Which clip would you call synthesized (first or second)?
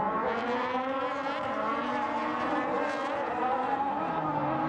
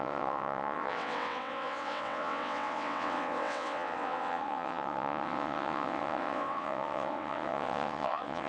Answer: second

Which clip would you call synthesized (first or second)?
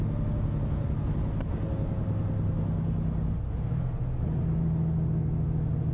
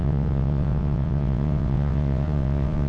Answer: second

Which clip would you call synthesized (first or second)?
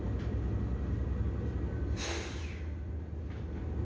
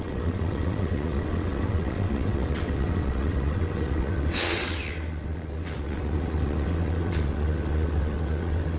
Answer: second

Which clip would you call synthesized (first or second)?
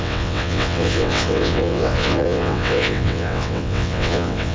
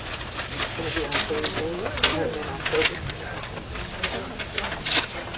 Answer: first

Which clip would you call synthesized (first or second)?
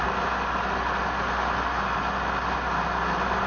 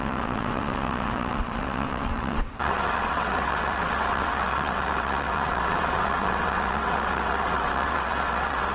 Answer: second